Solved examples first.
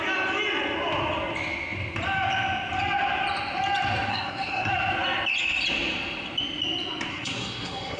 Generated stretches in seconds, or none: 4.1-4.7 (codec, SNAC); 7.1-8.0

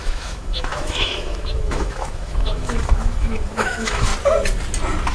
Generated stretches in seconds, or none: 0.0-4.1 (autoencoder, DAC-VAE)

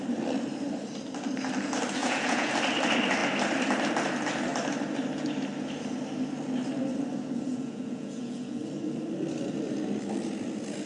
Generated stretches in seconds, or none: 2.0-2.5 (vocoder, Vocos); 7.5-8.6

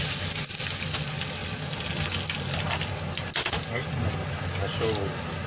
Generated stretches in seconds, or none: none

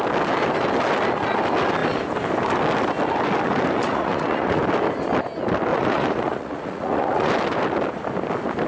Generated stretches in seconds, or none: 3.9-4.6 (vocoder, Vocos); 5.7-7.3